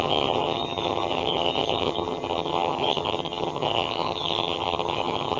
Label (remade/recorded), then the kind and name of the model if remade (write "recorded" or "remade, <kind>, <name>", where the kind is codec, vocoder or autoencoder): remade, vocoder, HiFi-GAN